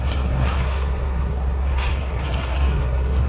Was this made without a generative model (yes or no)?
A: no